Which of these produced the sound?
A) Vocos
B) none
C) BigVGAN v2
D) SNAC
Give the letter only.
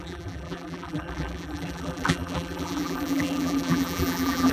C